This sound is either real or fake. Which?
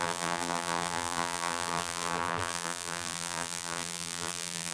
fake